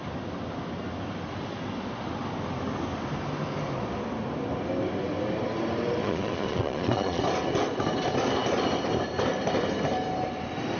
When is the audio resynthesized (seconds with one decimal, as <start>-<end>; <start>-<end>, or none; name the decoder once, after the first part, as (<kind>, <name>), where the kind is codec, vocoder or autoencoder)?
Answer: 6.0-7.2 (vocoder, Vocos)